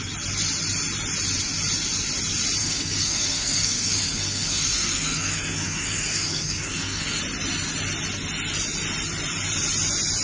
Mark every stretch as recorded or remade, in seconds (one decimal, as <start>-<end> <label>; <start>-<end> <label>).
0.0-2.6 recorded; 2.6-7.2 remade; 7.2-10.2 recorded